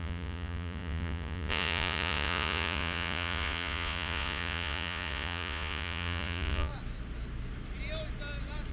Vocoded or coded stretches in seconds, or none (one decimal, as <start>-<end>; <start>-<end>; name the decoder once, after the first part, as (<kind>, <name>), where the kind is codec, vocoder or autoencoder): 0.0-6.7 (vocoder, Vocos)